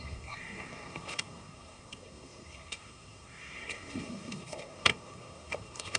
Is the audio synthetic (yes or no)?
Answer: yes